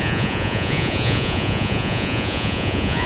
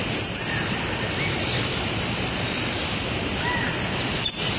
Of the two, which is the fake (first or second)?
first